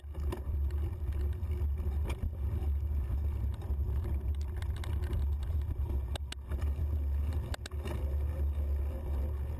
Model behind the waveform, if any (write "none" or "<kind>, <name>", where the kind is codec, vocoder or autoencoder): none